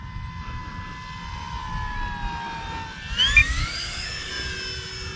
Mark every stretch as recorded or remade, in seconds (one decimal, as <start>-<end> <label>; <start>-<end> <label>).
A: 0.0-3.4 recorded; 3.4-4.3 remade; 4.3-5.2 recorded